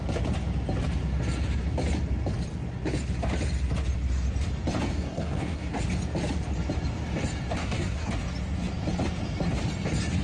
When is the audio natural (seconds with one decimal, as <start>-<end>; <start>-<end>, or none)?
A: 0.0-4.9; 5.8-7.6; 8.1-10.2